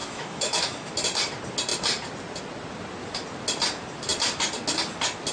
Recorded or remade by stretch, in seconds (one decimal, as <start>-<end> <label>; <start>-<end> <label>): 0.0-0.9 remade; 0.9-5.3 recorded